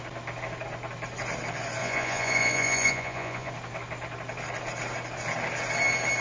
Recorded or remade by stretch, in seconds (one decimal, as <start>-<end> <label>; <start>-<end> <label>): 0.0-1.8 recorded; 1.8-3.5 remade; 3.5-6.2 recorded